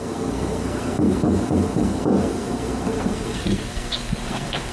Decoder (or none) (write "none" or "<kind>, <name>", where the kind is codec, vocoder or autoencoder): codec, SNAC